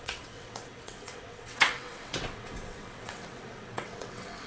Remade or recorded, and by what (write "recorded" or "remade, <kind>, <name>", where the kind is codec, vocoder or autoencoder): remade, vocoder, WaveNeXt